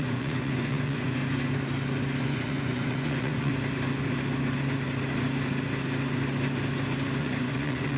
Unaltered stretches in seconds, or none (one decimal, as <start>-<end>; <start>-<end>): 1.2-2.2; 3.5-7.2